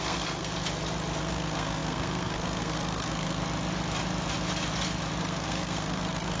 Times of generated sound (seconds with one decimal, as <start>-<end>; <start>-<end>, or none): 0.0-0.5; 1.2-3.4; 5.2-6.4

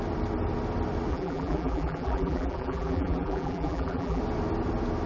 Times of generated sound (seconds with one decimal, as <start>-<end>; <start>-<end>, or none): 1.1-4.2

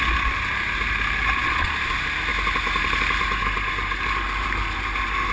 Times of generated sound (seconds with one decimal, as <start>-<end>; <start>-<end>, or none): none

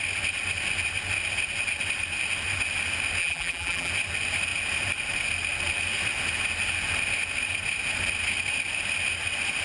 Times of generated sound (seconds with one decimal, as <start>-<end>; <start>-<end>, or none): 3.2-3.9